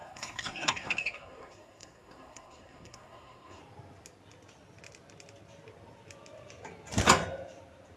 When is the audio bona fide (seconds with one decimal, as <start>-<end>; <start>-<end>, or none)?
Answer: 3.6-8.0